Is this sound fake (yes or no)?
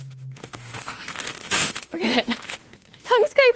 yes